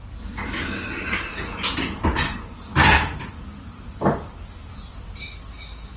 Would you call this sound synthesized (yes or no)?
no